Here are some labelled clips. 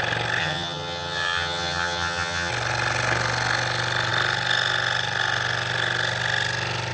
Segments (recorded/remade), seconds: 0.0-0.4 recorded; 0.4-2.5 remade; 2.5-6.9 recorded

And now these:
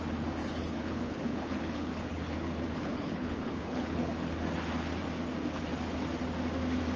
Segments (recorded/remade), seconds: 0.0-0.4 recorded; 0.4-4.1 remade; 4.1-7.0 recorded

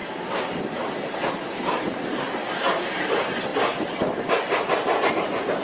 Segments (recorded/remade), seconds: 0.0-1.3 remade; 1.3-2.4 recorded; 2.4-3.1 remade; 3.1-5.6 recorded

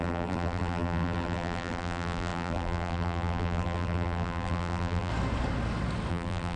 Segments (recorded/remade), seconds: 0.0-5.1 remade; 5.1-6.1 recorded; 6.1-6.6 remade

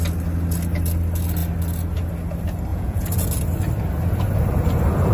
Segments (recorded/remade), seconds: 0.0-2.7 recorded; 2.7-3.3 remade; 3.3-5.1 recorded

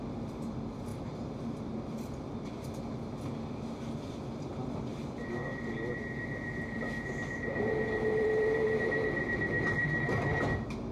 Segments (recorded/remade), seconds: 0.0-3.1 remade; 3.1-4.4 recorded; 4.4-4.9 remade; 4.9-5.9 recorded; 5.9-10.9 remade